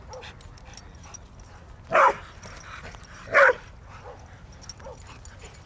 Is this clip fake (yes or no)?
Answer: no